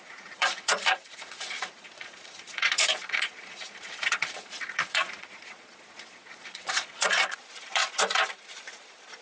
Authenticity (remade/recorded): remade